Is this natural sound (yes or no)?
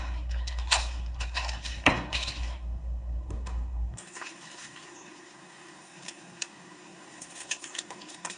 no